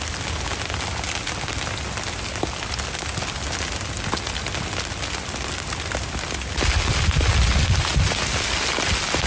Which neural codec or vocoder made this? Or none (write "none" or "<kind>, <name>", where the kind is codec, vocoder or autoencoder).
none